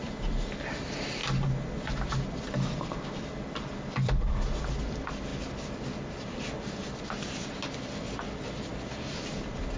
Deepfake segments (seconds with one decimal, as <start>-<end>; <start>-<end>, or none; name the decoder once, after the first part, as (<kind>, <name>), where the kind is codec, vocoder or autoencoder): 0.0-1.2 (vocoder, BigVGAN v2); 3.5-5.3; 6.2-9.8